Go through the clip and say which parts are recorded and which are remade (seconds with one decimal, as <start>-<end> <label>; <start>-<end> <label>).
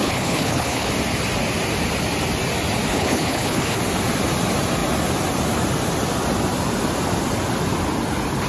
0.0-0.9 remade; 0.9-2.9 recorded; 2.9-3.8 remade; 3.8-8.5 recorded